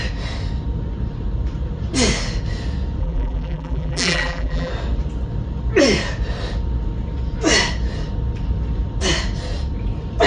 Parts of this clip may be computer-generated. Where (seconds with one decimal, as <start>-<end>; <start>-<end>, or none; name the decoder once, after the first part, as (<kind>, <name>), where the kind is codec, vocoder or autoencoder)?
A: 3.0-4.7 (vocoder, BigVGAN v2)